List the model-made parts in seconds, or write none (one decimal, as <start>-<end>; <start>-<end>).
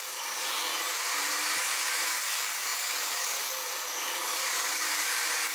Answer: 0.0-0.7; 1.6-5.5